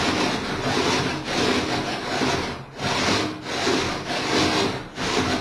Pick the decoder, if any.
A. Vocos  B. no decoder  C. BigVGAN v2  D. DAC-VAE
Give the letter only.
B